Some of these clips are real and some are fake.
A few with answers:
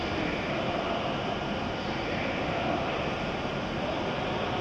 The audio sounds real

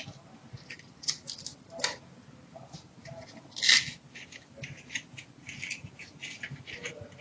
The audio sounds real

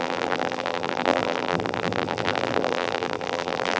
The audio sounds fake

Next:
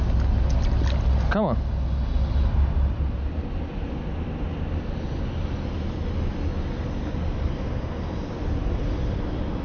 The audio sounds real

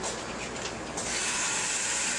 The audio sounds real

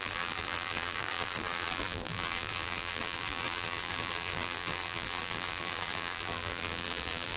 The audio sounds fake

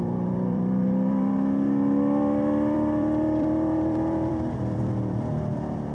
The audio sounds fake